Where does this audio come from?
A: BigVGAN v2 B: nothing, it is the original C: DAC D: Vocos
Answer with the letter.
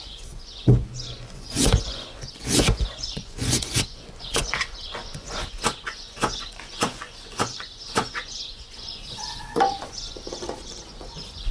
D